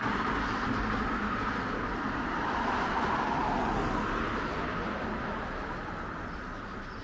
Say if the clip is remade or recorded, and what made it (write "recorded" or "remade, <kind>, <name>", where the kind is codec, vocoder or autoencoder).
recorded